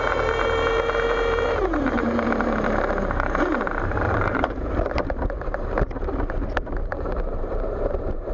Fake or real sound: fake